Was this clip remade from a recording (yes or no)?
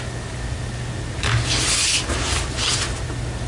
no